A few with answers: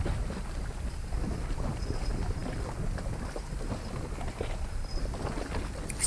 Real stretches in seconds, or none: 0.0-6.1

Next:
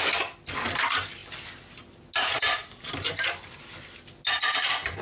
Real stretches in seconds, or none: 0.0-5.0